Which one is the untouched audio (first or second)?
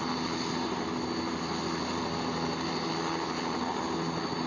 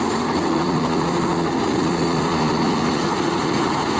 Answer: first